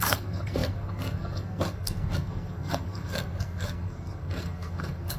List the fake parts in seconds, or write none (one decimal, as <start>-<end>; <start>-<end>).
0.0-5.2